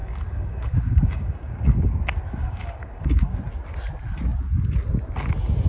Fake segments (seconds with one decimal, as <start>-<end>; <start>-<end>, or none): 0.0-1.9; 2.4-3.4